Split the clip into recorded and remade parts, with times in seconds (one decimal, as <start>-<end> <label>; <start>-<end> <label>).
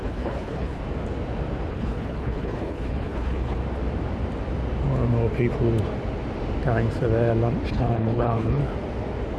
0.0-0.8 remade; 0.8-1.7 recorded; 1.7-3.6 remade; 3.6-7.7 recorded; 7.7-8.6 remade; 8.6-9.4 recorded